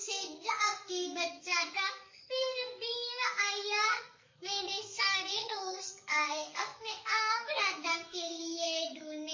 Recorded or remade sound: remade